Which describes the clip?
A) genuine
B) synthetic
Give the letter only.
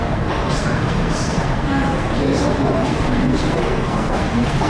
B